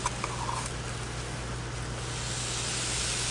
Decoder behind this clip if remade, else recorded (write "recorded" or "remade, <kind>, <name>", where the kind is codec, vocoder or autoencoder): recorded